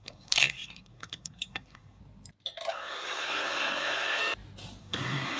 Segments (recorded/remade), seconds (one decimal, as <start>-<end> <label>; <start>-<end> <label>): 0.0-2.0 remade; 2.0-2.7 recorded; 2.7-4.2 remade; 4.2-4.8 recorded; 4.8-5.4 remade